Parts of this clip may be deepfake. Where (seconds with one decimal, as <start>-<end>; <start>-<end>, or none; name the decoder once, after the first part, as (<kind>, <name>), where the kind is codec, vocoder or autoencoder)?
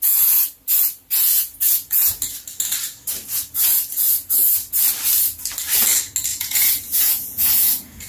1.2-2.2 (vocoder, Vocos); 6.3-8.1